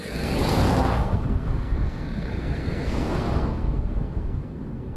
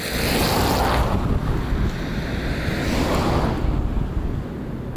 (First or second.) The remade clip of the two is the first